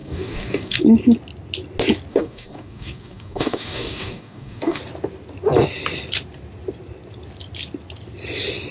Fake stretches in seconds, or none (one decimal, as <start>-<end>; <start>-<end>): 0.0-0.8; 2.1-4.8

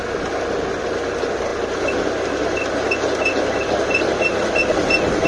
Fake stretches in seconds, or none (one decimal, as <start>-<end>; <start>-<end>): none

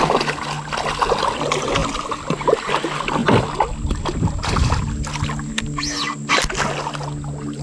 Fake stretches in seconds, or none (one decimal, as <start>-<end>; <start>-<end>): none

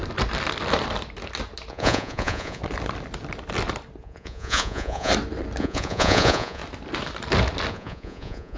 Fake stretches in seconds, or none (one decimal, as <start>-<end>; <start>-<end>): 1.7-2.6; 4.0-5.1; 5.6-6.6; 7.7-8.6

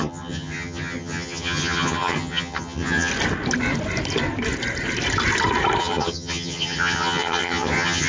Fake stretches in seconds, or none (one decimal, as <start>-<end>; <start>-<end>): 0.0-3.1; 5.8-8.1

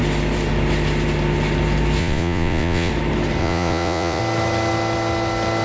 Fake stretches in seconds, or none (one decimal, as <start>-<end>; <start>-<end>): 2.0-2.9; 3.4-4.2

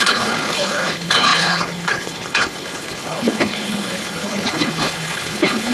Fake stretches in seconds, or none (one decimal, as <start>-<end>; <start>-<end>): 0.0-5.7